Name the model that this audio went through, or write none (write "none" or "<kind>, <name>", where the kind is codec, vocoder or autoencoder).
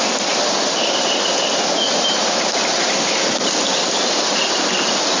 none